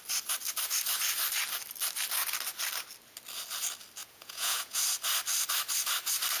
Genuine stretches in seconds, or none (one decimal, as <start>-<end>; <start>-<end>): 0.0-4.0; 4.8-6.4